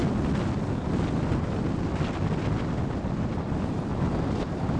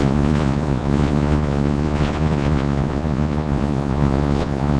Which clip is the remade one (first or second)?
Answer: second